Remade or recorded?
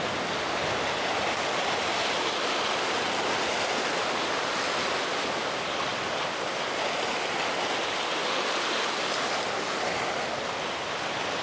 recorded